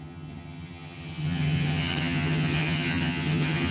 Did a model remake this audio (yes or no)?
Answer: yes